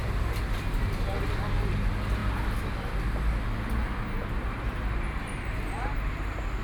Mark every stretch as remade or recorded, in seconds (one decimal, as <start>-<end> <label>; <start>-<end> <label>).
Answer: 0.0-1.7 remade; 1.7-6.6 recorded